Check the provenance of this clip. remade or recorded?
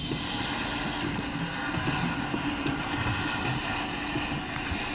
recorded